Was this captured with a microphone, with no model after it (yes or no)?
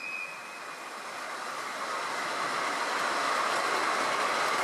yes